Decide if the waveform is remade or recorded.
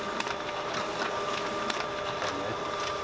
recorded